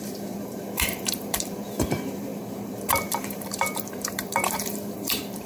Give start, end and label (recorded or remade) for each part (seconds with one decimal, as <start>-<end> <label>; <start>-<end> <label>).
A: 0.0-5.5 remade